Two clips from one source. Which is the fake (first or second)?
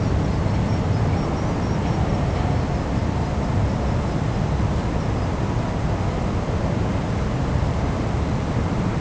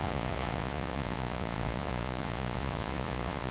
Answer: second